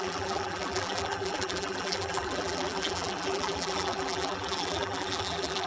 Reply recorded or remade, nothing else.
remade